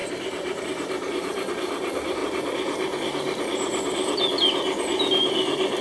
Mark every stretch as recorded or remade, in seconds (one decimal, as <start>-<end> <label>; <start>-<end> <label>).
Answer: 0.0-2.2 remade; 2.2-5.8 recorded